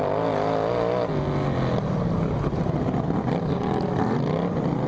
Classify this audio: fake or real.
real